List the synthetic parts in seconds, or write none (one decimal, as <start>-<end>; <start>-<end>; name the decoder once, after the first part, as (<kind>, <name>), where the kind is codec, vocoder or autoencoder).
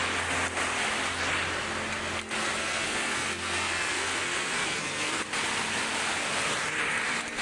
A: 2.6-5.2 (codec, SNAC)